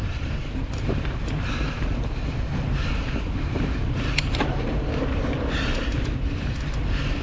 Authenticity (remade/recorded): remade